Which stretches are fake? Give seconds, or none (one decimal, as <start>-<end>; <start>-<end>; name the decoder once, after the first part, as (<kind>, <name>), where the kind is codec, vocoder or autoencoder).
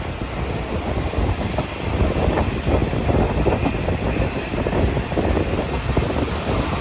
none